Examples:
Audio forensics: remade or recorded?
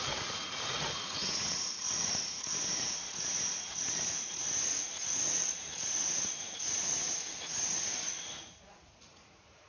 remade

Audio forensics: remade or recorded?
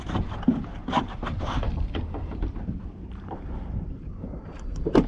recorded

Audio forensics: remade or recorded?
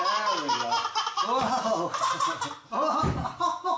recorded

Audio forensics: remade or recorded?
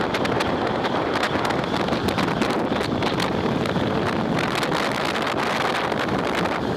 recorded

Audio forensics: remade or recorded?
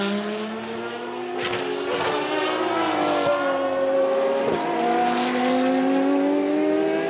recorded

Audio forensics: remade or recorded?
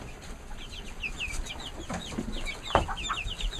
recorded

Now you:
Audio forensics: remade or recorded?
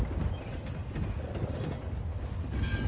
recorded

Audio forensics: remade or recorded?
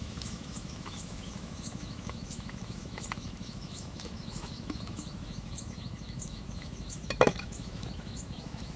remade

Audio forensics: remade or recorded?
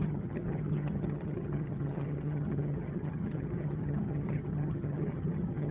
remade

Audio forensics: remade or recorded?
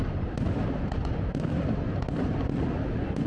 recorded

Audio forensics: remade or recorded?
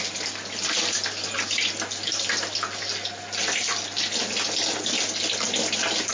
recorded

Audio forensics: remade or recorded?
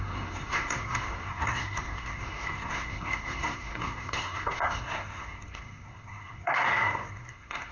remade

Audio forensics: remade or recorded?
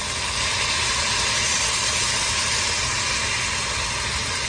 recorded